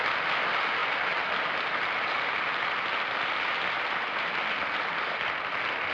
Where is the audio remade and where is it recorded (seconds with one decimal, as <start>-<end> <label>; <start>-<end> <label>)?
0.0-5.9 recorded